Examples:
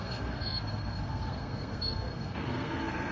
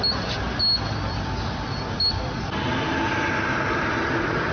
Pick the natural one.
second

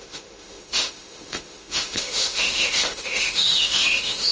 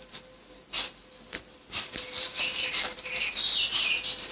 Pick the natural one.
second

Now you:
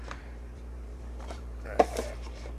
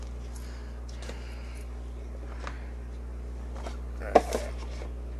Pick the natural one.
second